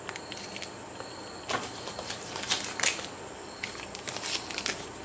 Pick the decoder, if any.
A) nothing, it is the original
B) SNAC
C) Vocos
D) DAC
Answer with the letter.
A